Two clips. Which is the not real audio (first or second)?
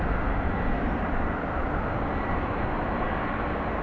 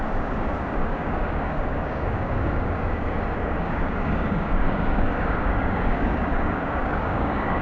second